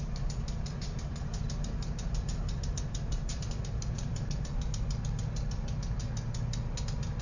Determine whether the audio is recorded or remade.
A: recorded